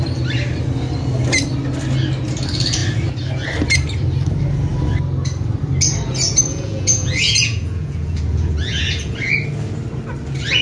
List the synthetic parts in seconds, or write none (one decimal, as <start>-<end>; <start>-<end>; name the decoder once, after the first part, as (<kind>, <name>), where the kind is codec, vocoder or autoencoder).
6.5-9.3 (vocoder, Vocos)